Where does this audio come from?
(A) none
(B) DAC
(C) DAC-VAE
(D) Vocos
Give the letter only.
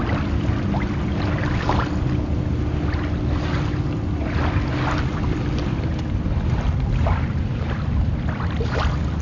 A